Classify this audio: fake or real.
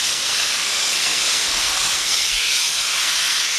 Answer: fake